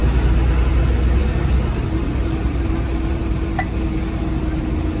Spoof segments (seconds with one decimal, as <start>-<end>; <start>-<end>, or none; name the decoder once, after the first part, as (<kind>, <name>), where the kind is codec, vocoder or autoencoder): none